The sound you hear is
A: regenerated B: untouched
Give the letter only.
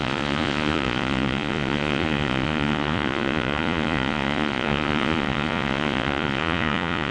A